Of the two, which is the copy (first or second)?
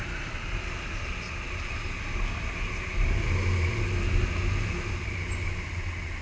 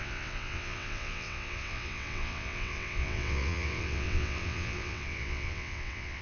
second